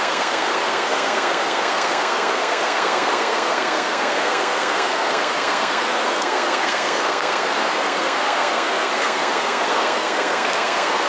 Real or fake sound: fake